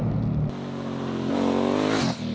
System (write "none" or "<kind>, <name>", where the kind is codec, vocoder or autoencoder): none